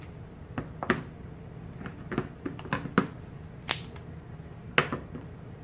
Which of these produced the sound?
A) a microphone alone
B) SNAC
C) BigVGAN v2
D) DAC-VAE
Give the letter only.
A